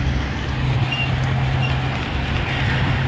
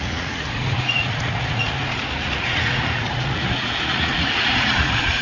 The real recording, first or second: first